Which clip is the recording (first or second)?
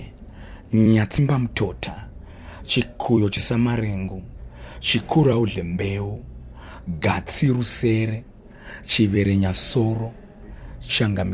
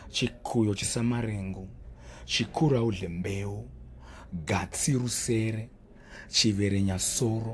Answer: second